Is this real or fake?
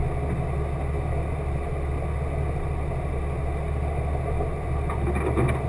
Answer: real